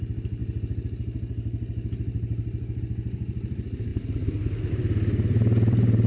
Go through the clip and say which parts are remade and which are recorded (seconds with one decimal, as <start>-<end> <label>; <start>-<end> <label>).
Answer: 0.0-3.9 remade; 3.9-4.7 recorded; 4.7-6.1 remade